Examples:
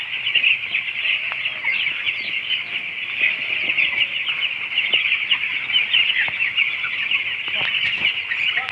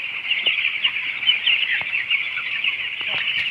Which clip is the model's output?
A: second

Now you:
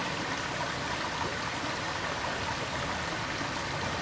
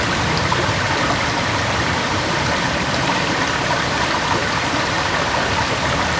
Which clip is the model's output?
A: second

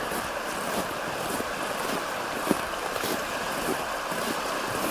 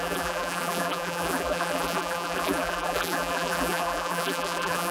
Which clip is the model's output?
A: second